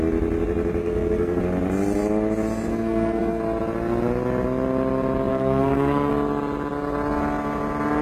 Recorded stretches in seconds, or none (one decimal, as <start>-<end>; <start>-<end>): 0.0-0.8; 1.4-2.7; 3.4-5.3; 6.1-8.0